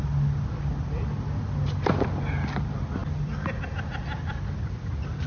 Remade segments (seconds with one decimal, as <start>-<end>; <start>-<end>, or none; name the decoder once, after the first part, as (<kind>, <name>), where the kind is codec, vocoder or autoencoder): none